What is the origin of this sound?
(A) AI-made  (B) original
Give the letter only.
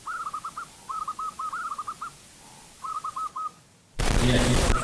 B